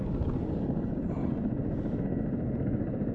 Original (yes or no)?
yes